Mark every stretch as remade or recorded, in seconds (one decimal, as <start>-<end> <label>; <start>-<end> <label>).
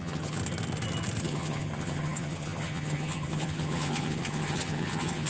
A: 0.0-0.4 remade; 0.4-1.2 recorded; 1.2-5.3 remade